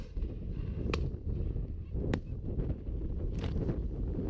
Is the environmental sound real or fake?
fake